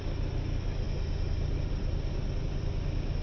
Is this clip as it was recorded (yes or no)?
yes